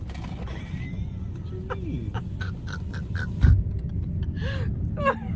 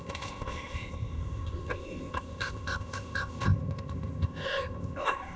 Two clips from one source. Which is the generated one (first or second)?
second